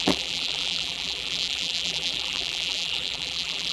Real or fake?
fake